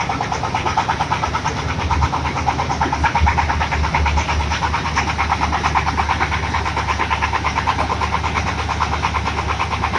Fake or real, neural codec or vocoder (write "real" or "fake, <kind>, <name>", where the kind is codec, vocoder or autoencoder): real